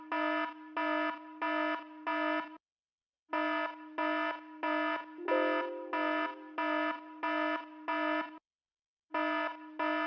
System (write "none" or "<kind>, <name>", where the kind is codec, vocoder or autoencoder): none